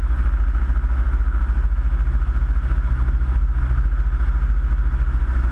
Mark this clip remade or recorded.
recorded